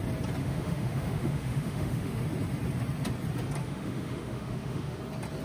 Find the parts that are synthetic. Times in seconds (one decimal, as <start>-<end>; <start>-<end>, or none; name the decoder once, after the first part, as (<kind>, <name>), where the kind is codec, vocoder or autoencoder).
0.4-2.2 (autoencoder, DAC-VAE); 3.6-5.0